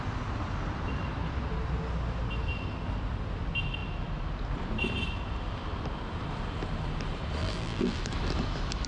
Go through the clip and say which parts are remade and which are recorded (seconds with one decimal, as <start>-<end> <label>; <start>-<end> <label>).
0.0-7.4 recorded; 7.4-8.0 remade; 8.0-8.9 recorded